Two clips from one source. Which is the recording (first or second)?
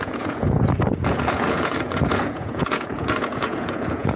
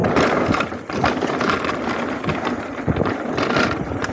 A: second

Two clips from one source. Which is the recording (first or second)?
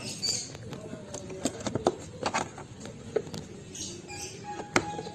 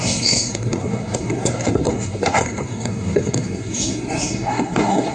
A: first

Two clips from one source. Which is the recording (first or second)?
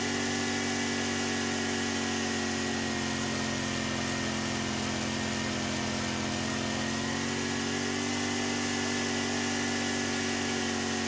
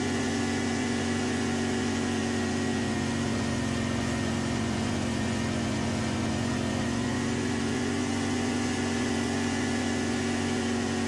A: first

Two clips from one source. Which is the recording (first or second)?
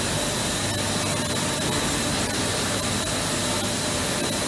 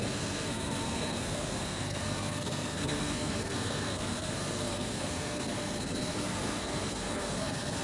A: first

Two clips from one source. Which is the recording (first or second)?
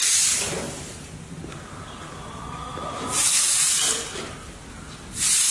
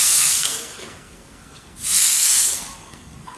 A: first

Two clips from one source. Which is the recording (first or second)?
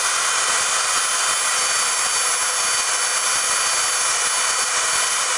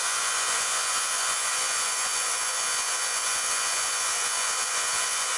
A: first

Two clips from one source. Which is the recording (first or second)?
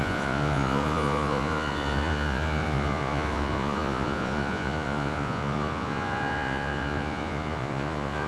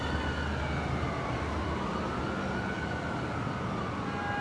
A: second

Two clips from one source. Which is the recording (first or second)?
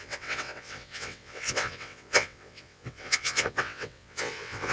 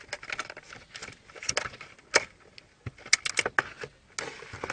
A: second